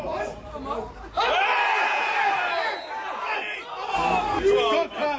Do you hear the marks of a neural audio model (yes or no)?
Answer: no